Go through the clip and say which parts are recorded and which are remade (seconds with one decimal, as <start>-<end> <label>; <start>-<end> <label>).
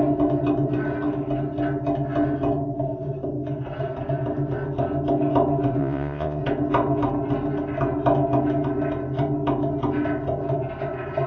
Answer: 0.0-5.8 recorded; 5.8-6.4 remade; 6.4-11.3 recorded